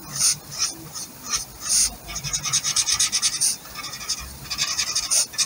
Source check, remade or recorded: recorded